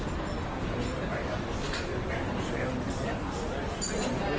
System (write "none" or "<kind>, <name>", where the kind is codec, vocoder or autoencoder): none